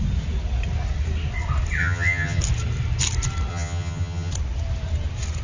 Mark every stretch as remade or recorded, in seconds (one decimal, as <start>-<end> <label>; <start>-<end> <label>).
0.0-1.8 recorded; 1.8-2.4 remade; 2.4-3.5 recorded; 3.5-4.3 remade; 4.3-5.4 recorded